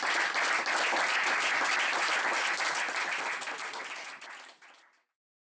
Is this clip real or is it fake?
real